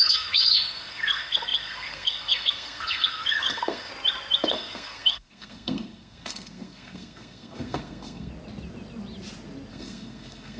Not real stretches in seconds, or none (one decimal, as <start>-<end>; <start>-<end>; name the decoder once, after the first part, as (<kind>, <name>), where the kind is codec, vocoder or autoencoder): 0.0-3.9 (codec, SNAC); 4.5-8.3; 9.7-10.6